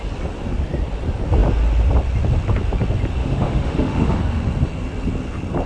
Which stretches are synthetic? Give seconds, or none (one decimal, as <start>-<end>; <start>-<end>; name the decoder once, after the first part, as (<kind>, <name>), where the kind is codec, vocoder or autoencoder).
3.2-4.2 (autoencoder, DAC-VAE)